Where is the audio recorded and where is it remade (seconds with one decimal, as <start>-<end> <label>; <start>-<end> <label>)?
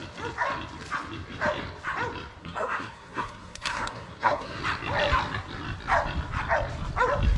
0.0-2.4 recorded; 2.4-4.6 remade; 4.6-7.4 recorded